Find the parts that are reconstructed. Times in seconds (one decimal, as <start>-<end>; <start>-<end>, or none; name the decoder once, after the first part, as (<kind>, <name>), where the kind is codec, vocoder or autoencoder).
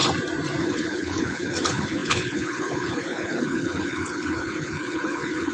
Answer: 0.6-5.5 (codec, HILCodec)